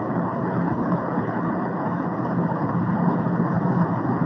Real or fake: fake